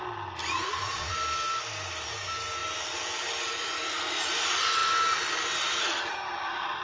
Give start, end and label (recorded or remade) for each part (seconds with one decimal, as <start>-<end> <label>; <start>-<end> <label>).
0.0-0.4 recorded; 0.4-1.1 remade; 1.1-6.8 recorded